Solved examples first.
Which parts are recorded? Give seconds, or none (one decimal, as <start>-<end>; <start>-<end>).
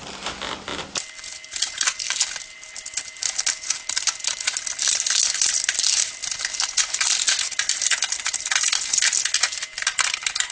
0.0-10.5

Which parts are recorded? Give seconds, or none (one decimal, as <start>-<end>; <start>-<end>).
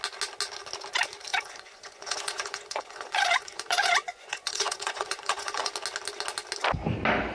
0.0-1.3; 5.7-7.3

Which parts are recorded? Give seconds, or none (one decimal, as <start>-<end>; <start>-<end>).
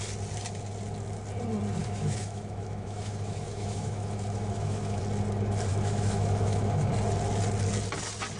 0.0-1.8; 5.0-5.7; 6.9-8.4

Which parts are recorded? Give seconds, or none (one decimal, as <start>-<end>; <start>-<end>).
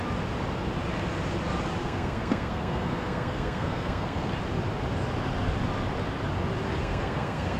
0.0-1.8; 4.3-6.8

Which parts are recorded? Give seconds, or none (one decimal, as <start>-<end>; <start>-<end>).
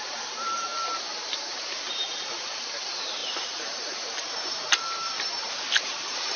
0.7-1.9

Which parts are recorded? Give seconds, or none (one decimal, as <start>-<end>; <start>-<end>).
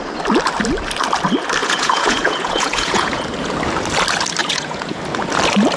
0.0-1.6; 3.2-4.4; 5.0-5.8